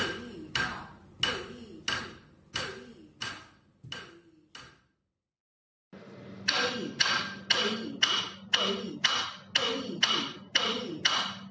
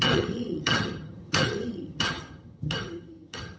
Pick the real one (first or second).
first